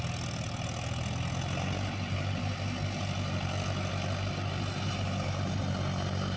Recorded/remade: recorded